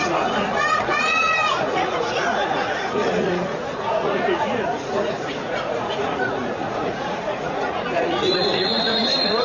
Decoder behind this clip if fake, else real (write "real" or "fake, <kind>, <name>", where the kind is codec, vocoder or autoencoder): fake, vocoder, Vocos